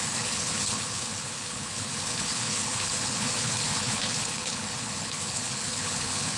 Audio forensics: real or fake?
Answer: fake